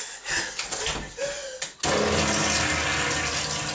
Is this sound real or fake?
real